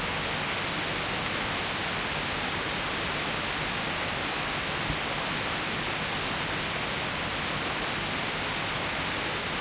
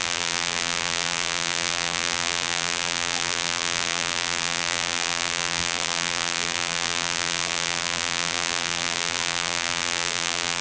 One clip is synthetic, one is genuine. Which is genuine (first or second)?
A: first